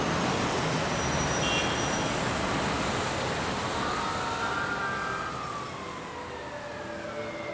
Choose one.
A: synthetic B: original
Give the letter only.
B